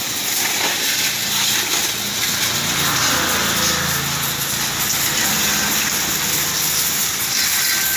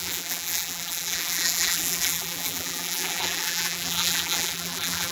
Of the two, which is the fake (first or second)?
second